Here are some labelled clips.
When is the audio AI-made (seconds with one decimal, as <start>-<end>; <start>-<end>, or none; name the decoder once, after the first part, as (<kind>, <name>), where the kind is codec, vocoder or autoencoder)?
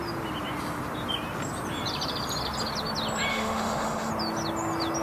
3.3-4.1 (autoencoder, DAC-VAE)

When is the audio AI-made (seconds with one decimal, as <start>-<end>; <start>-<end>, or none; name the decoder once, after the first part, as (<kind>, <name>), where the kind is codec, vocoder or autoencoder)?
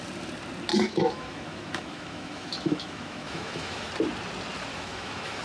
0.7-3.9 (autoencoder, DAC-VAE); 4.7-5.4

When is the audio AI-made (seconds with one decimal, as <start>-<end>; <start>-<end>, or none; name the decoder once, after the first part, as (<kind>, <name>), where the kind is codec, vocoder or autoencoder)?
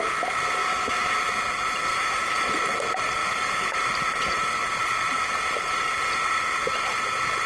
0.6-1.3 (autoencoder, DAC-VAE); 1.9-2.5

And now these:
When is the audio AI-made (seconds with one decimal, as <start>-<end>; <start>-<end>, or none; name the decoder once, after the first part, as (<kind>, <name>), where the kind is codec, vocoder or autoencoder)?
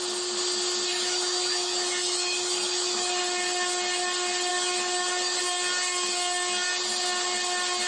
0.9-3.2 (autoencoder, DAC-VAE); 4.5-5.4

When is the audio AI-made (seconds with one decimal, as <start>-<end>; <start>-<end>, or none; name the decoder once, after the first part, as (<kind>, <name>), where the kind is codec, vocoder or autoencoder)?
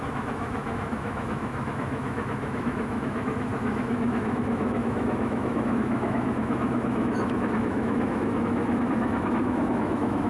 0.0-10.3 (autoencoder, DAC-VAE)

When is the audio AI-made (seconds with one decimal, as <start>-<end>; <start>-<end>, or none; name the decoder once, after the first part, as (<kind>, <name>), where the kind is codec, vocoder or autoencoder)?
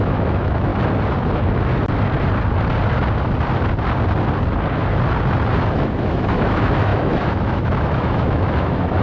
0.0-0.7 (autoencoder, DAC-VAE); 5.7-9.0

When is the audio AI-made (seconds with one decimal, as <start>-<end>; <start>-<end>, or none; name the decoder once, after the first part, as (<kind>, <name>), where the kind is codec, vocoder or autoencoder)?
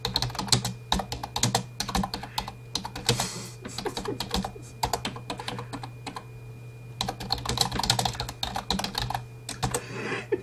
none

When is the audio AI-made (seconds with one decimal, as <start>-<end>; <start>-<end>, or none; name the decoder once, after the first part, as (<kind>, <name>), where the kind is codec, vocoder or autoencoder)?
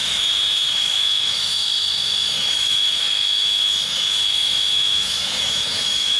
0.0-6.2 (autoencoder, DAC-VAE)